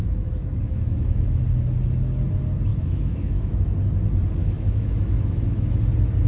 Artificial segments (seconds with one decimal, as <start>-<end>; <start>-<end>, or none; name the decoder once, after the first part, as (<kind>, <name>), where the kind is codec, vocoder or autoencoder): 0.0-1.4 (autoencoder, DAC-VAE); 2.7-3.5; 4.4-5.8